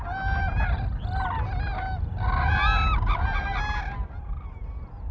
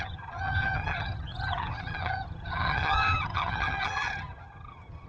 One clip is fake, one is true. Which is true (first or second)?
first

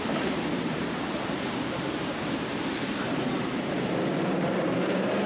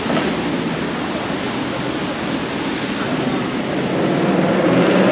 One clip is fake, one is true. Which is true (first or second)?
second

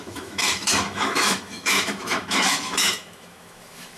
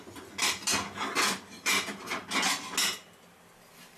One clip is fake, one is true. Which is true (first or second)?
second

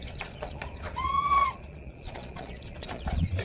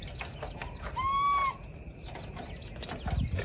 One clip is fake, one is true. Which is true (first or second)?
second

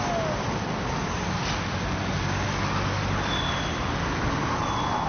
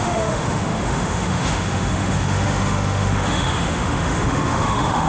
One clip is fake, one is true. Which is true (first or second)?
first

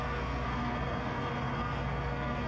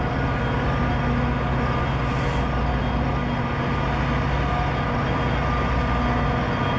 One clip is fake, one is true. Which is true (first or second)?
second